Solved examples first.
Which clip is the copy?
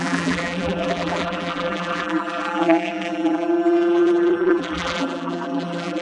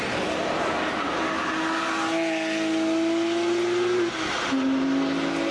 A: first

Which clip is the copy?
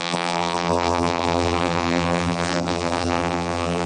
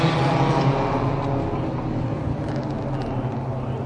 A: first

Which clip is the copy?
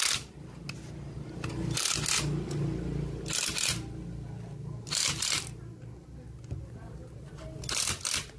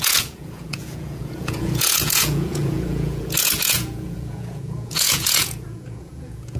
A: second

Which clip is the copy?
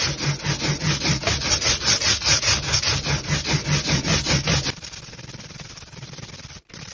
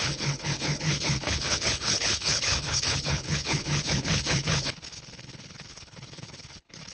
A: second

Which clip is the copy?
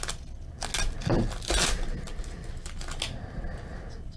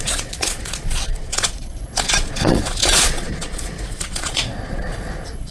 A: second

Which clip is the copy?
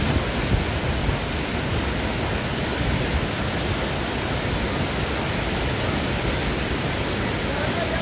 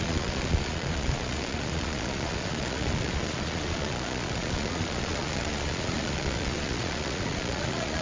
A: second